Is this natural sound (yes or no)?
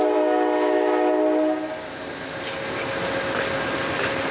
yes